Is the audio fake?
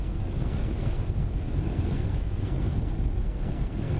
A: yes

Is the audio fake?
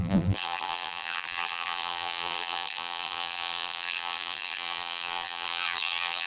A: yes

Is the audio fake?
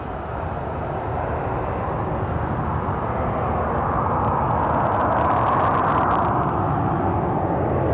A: no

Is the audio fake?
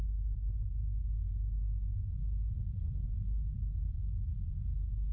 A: no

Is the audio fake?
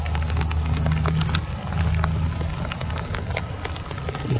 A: no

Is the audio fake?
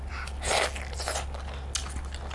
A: no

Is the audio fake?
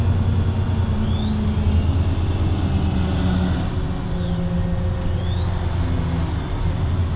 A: no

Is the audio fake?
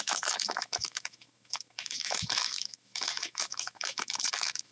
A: yes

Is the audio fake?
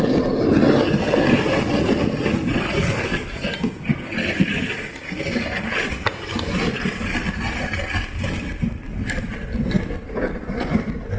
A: no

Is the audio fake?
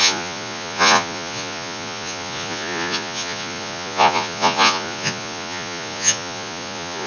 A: yes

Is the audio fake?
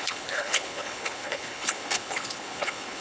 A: yes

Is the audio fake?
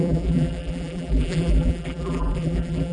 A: yes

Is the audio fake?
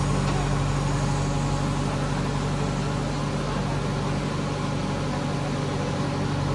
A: no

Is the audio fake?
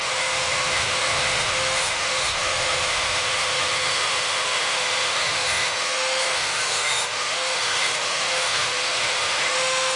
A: yes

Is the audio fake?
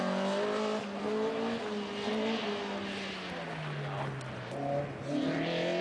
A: no